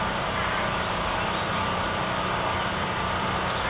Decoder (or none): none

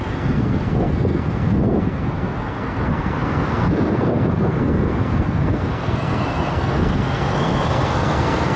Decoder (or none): codec, SNAC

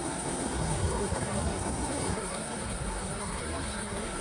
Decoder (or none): codec, SNAC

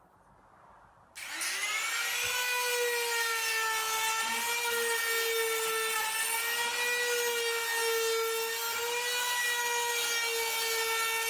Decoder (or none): none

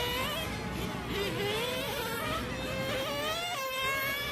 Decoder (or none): none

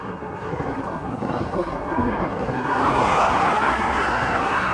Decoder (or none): codec, SNAC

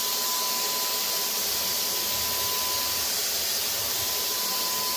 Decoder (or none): none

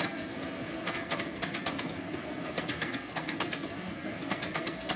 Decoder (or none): codec, SNAC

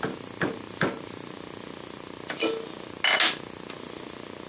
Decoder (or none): none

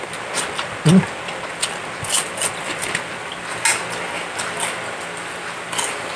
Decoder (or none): none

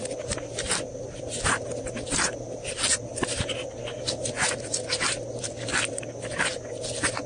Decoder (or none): none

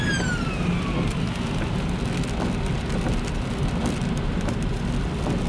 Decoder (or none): none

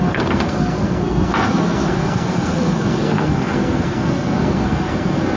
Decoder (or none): codec, SNAC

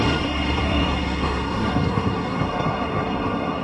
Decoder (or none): codec, SNAC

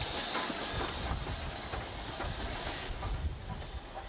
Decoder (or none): none